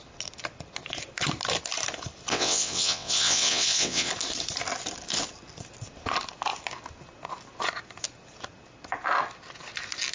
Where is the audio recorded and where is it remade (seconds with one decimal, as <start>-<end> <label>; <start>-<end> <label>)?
0.0-2.3 recorded; 2.3-4.1 remade; 4.1-10.1 recorded